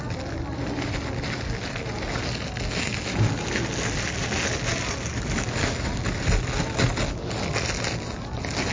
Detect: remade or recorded recorded